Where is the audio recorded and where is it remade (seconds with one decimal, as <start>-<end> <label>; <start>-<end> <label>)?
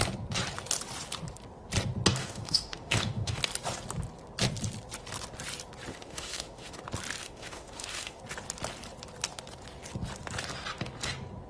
0.0-2.2 recorded; 2.2-3.4 remade; 3.4-5.9 recorded; 5.9-6.8 remade; 6.8-7.2 recorded; 7.2-8.2 remade; 8.2-11.5 recorded